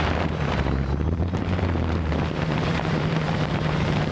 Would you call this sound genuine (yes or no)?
no